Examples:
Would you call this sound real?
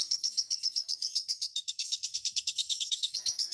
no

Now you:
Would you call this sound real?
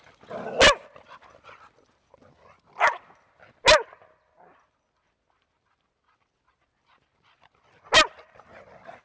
yes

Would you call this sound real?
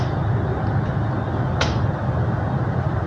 yes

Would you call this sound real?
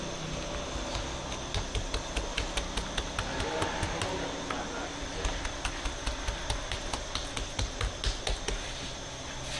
yes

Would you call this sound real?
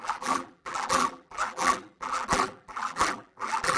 no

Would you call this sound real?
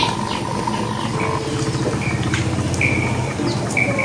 yes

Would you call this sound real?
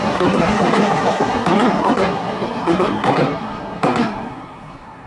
no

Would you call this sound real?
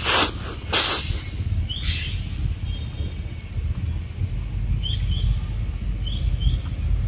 yes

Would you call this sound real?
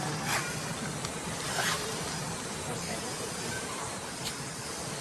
yes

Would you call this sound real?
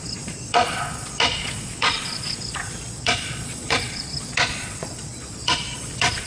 no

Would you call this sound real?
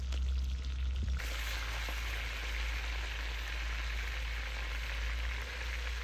yes